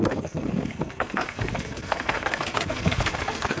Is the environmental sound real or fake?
fake